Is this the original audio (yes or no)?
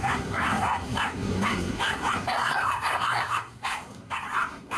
no